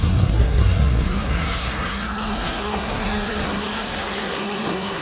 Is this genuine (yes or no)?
no